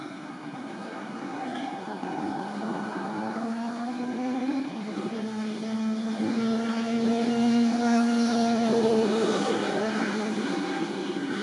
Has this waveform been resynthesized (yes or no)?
yes